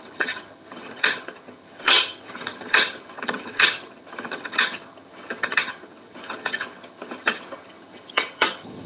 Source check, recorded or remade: remade